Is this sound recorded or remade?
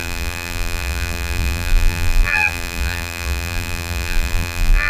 remade